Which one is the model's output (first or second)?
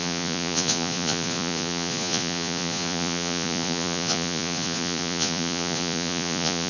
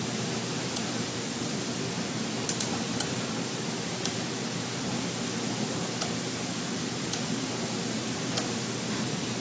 first